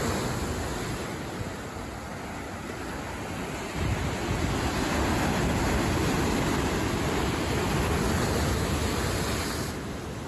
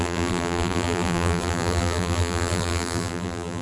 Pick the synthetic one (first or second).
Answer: second